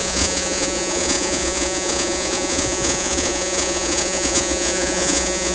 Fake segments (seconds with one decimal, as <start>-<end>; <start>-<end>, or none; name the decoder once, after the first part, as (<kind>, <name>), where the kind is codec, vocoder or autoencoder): 0.0-5.5 (vocoder, Vocos)